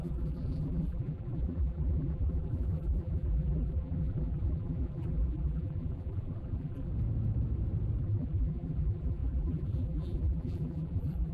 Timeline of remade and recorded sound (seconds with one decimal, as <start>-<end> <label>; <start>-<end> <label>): 0.0-6.9 remade; 6.9-8.0 recorded; 8.0-11.3 remade